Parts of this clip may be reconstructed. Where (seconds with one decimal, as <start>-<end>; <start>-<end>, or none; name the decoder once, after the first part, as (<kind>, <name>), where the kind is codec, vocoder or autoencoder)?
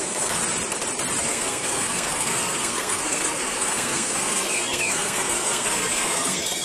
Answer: 0.0-0.4 (codec, SNAC); 1.2-6.6